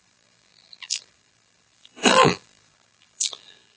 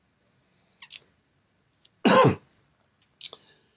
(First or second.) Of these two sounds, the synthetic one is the first